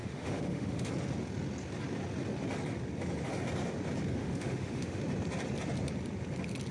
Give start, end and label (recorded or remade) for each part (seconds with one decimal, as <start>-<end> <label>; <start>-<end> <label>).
0.0-0.9 remade; 0.9-4.2 recorded; 4.2-5.0 remade; 5.0-6.7 recorded